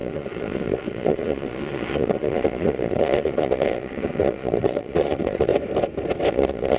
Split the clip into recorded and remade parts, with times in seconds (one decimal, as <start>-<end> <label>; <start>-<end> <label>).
0.0-5.5 remade; 5.5-6.3 recorded; 6.3-6.8 remade